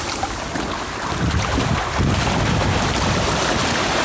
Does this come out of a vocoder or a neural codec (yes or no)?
no